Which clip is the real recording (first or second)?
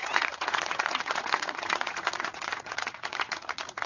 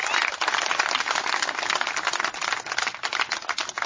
second